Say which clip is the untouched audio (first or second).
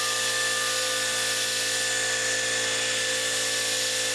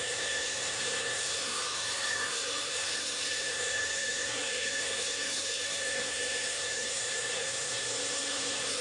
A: first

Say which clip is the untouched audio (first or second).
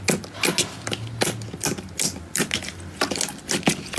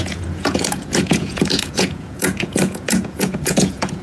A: first